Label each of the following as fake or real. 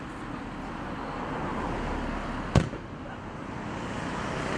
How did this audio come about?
real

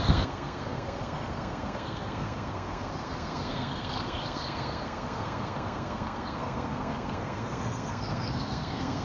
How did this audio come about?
fake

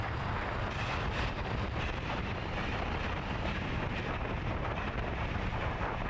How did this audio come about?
fake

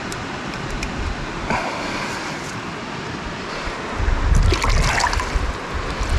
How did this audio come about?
real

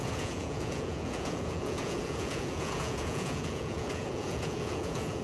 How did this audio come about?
fake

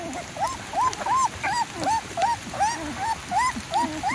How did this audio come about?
real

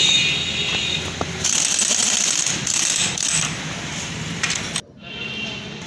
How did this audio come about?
real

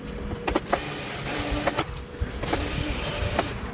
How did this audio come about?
fake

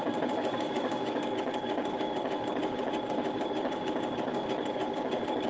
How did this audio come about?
fake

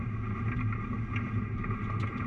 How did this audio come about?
real